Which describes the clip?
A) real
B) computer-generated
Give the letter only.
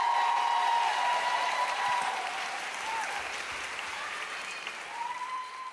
B